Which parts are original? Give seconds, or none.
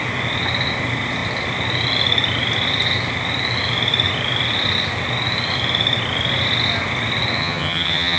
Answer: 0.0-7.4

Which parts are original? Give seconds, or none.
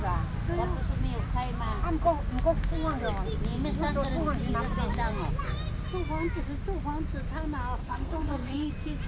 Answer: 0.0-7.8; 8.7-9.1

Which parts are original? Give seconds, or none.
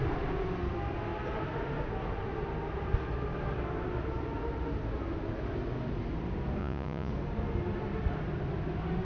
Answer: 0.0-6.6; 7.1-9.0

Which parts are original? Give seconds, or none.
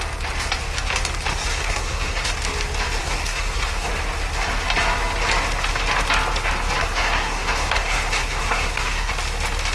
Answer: 0.0-1.3; 2.3-3.0; 3.9-6.8; 9.1-9.7